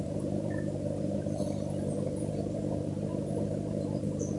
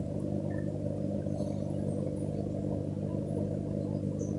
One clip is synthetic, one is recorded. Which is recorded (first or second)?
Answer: second